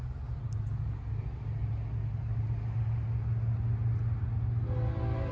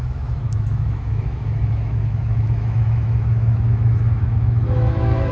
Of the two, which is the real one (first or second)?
first